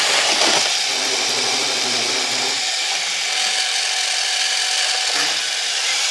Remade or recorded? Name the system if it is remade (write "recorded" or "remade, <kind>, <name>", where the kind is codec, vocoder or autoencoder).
recorded